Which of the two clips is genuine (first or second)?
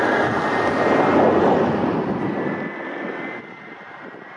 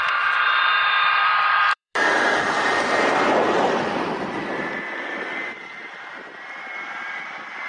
first